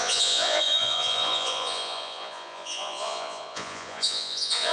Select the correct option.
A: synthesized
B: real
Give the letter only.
A